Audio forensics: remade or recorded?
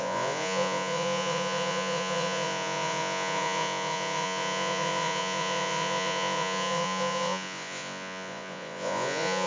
remade